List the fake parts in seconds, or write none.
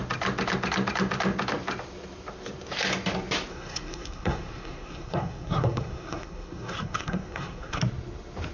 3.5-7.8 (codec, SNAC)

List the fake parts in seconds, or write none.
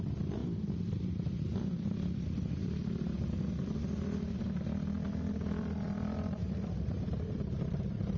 6.4-8.2 (vocoder, BigVGAN v2)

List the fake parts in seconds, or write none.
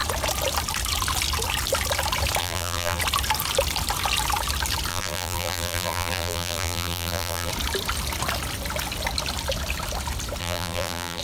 2.4-3.0 (vocoder, BigVGAN v2); 4.9-7.5; 10.4-11.2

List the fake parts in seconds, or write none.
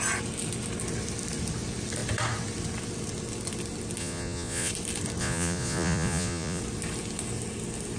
4.0-4.7 (vocoder, Vocos); 5.2-6.6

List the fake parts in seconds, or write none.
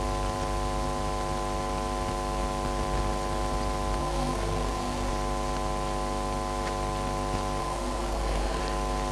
4.0-5.1 (codec, SNAC); 7.6-8.6